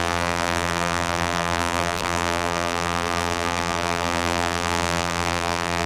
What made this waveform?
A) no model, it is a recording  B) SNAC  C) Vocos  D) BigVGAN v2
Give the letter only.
D